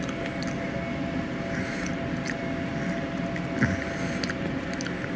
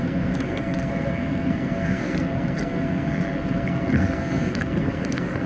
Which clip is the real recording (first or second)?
first